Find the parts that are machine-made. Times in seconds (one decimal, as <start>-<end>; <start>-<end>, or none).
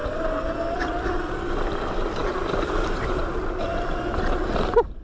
none